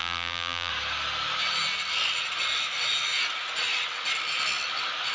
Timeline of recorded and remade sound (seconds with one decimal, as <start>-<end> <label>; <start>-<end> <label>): 0.0-0.7 remade; 0.7-5.1 recorded